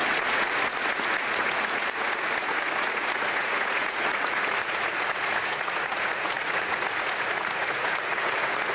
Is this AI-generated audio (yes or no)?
yes